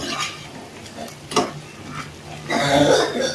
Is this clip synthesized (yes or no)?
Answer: no